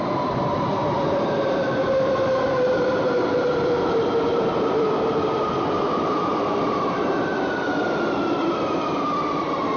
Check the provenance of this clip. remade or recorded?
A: remade